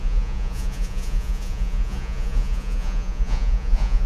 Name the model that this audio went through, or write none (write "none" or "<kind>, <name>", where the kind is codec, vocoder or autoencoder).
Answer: vocoder, Vocos